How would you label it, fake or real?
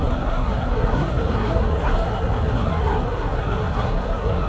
fake